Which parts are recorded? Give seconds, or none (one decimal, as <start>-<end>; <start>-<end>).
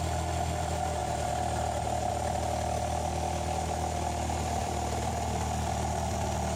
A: 0.0-1.0; 2.1-4.6; 5.1-6.6